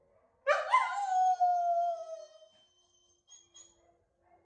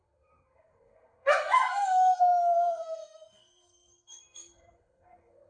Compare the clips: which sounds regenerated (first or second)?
second